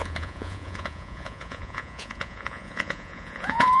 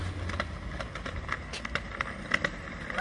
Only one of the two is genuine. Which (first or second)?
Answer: second